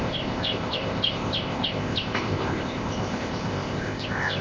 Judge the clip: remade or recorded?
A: remade